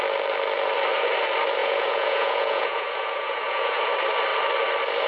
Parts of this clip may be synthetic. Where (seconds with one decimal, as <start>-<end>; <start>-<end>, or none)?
1.6-3.9